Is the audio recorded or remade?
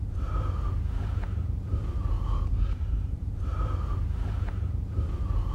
remade